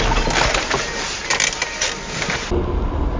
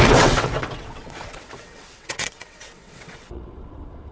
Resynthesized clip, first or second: second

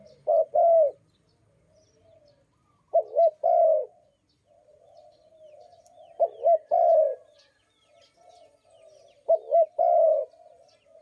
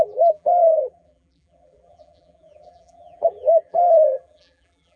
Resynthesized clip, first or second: second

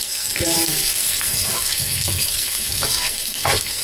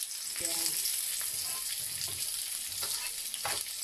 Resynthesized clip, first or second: first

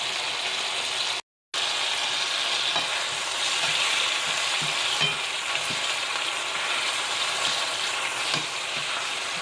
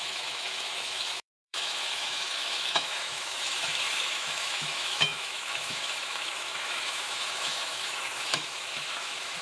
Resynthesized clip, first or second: second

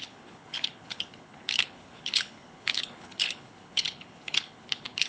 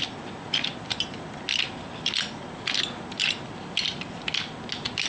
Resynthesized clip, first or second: first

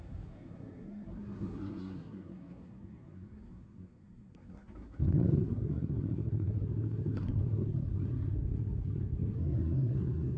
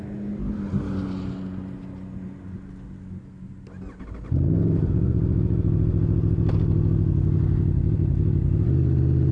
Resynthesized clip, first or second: first